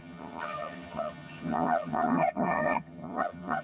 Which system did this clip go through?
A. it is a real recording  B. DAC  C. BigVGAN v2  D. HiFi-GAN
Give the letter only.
D